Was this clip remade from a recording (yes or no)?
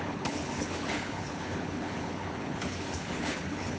yes